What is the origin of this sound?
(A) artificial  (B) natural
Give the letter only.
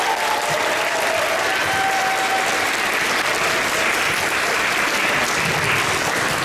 B